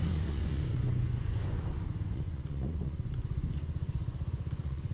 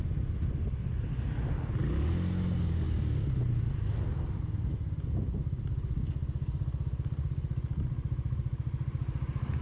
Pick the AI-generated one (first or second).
first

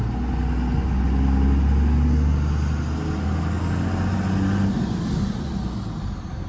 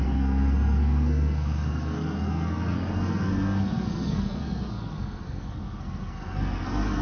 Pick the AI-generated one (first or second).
second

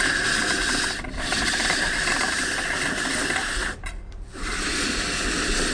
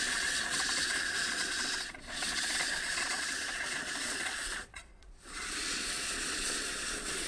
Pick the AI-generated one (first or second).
second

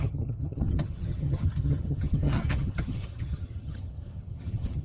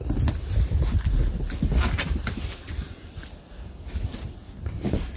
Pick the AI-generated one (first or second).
first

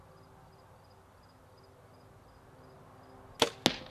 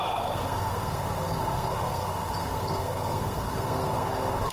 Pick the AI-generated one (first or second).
second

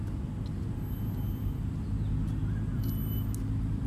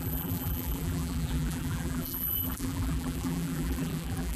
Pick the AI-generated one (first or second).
second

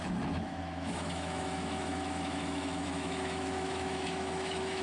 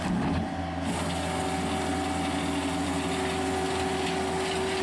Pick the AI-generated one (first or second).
first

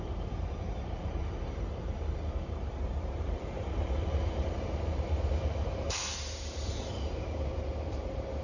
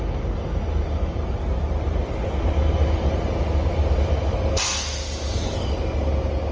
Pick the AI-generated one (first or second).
first